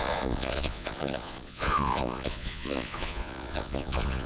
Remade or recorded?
remade